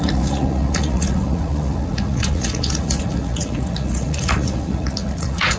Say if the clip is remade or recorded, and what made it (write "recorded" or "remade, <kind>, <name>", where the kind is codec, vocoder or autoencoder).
remade, vocoder, Vocos